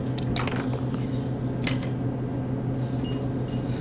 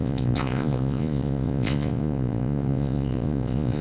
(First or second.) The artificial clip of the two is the second